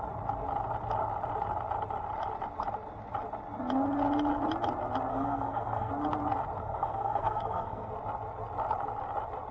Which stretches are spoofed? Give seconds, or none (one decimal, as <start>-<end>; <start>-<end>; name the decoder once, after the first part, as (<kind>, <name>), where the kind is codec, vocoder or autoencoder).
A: 5.1-5.9 (codec, SNAC); 6.6-7.9